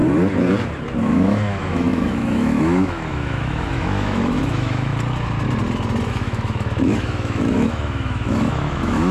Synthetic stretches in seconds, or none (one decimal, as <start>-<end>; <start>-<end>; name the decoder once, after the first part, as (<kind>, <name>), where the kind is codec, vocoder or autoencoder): 1.0-4.9 (autoencoder, DAC-VAE); 6.1-9.1